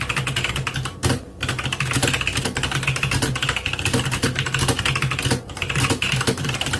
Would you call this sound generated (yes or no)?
no